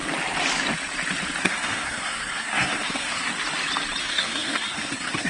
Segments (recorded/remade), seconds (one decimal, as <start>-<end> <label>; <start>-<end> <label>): 0.0-1.4 recorded; 1.4-3.3 remade; 3.3-4.0 recorded; 4.0-5.3 remade